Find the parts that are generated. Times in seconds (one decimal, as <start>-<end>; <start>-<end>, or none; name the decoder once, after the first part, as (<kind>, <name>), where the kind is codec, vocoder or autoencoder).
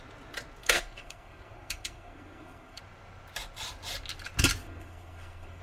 0.6-2.8 (codec, SNAC); 4.6-5.6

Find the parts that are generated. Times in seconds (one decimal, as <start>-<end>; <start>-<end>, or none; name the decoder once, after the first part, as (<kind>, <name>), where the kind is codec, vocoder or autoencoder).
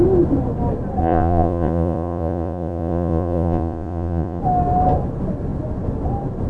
1.0-4.4 (vocoder, Vocos)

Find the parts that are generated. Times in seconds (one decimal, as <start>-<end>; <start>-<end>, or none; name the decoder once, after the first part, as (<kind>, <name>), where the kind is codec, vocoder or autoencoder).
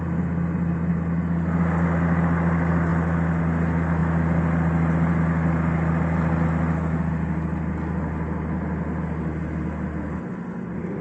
none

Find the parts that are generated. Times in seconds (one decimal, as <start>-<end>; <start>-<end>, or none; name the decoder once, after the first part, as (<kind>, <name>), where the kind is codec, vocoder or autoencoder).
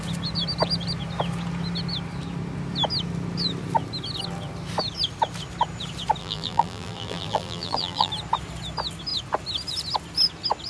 6.2-8.1 (vocoder, BigVGAN v2)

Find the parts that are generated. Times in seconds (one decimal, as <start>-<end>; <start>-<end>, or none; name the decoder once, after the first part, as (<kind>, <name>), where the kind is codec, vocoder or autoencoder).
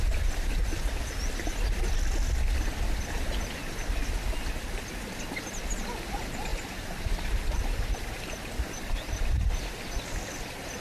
6.5-9.8 (vocoder, BigVGAN v2)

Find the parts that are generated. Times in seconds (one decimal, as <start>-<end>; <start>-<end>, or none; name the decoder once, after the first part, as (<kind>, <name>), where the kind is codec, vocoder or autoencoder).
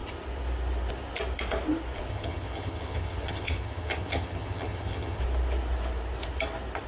2.1-5.2 (vocoder, HiFi-GAN)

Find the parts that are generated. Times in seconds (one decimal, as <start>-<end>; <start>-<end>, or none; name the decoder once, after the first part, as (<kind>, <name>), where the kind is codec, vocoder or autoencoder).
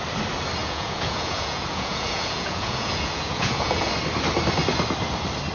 0.6-3.9 (vocoder, Vocos)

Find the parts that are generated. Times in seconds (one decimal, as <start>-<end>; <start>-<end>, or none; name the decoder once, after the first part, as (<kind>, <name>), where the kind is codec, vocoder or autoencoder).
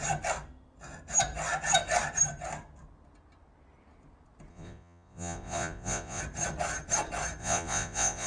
4.5-6.2 (vocoder, Vocos); 7.4-8.3